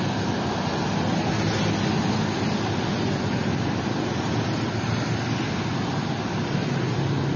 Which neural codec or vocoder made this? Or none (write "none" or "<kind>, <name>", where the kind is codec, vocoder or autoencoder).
none